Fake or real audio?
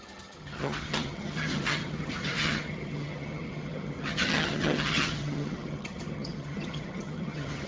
fake